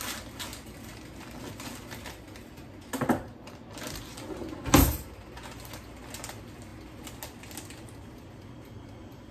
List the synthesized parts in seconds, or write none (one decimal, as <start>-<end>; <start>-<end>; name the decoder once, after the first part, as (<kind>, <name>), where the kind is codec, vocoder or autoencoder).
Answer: none